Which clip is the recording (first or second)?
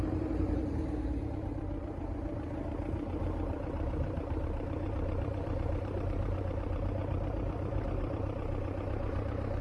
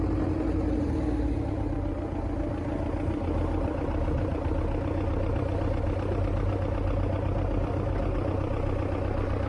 second